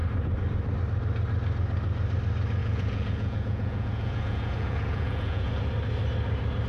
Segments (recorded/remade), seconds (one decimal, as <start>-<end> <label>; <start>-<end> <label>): 0.0-2.6 recorded; 2.6-5.5 remade; 5.5-6.7 recorded